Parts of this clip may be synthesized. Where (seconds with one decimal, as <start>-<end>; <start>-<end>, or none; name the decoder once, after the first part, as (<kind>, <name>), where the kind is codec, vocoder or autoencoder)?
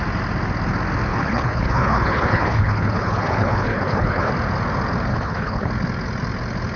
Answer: 1.1-4.3 (codec, HILCodec); 5.1-5.7